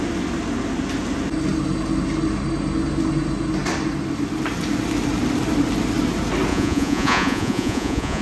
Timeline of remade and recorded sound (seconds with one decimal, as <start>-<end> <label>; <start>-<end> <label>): 0.0-6.5 recorded; 6.5-8.2 remade